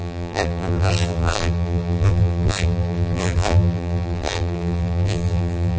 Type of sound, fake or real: fake